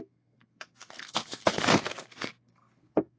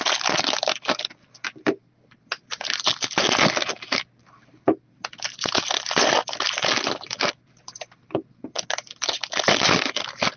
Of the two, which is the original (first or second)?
second